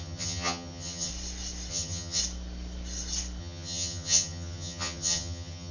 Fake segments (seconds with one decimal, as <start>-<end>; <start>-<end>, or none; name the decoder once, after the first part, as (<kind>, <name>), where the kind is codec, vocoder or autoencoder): 0.0-1.1 (vocoder, HiFi-GAN); 1.7-2.2; 3.4-5.7